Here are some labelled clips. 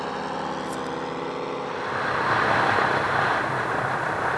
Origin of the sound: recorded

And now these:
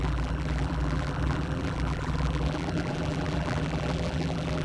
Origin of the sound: remade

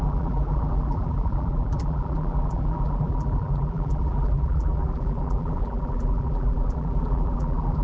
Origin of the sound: remade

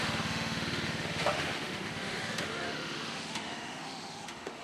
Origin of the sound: remade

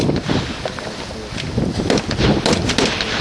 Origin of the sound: recorded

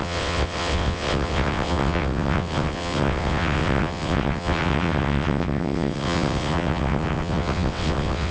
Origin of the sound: remade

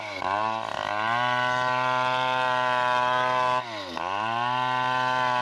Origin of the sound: recorded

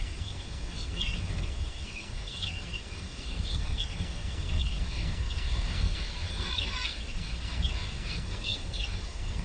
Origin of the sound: remade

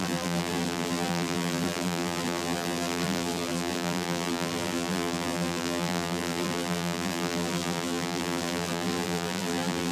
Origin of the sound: remade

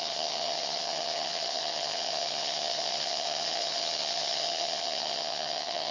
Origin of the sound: remade